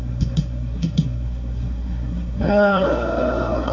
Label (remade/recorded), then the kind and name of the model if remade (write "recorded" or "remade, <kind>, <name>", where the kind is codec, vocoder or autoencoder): remade, codec, SNAC